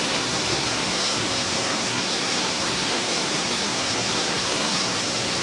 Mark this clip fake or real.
fake